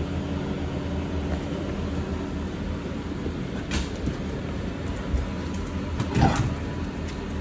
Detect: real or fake real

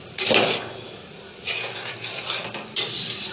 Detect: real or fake fake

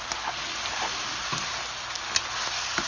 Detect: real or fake real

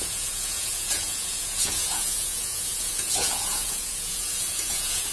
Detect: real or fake fake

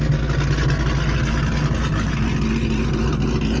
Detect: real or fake real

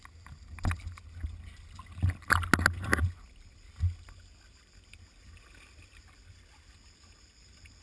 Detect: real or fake real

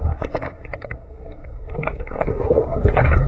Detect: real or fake fake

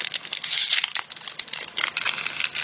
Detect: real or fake real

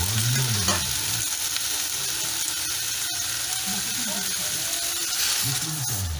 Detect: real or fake real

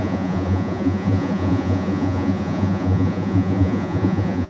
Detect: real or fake fake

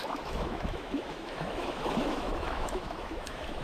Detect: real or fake fake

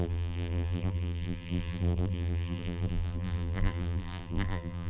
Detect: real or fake fake